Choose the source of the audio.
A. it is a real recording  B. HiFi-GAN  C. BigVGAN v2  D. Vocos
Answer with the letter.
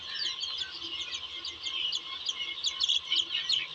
A